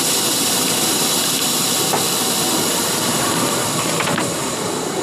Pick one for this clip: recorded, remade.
remade